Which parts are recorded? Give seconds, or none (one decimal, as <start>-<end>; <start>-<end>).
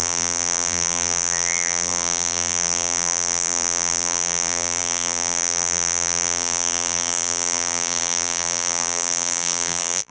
none